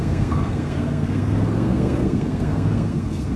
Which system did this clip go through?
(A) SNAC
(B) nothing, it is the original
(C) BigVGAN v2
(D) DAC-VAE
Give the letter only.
A